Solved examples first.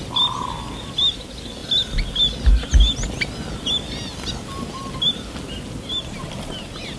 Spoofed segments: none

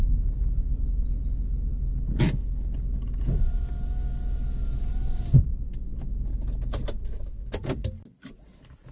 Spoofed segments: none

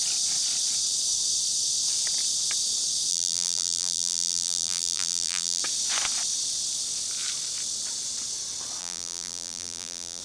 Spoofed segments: 3.1-5.6 (vocoder, BigVGAN v2); 8.8-10.2

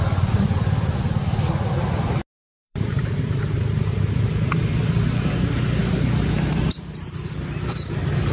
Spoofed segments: 2.4-4.0 (vocoder, BigVGAN v2); 5.8-7.9